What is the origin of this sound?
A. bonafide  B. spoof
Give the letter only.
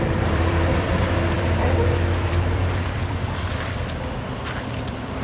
B